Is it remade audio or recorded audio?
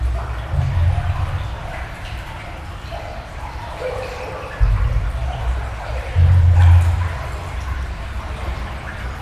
recorded